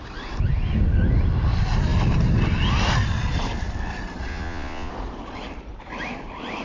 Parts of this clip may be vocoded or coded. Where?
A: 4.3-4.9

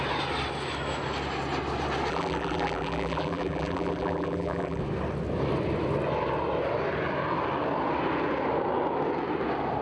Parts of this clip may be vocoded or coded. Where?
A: 2.1-4.8

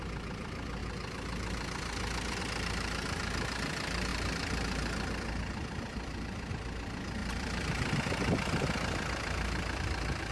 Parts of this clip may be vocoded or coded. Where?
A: 4.1-6.5; 7.2-9.8